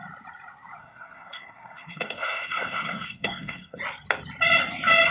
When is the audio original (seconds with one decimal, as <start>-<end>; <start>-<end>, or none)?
0.0-0.8; 3.8-5.1